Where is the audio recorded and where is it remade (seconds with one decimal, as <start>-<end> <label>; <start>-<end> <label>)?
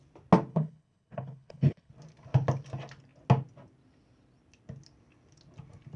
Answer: 0.0-0.5 recorded; 0.5-1.9 remade; 1.9-6.0 recorded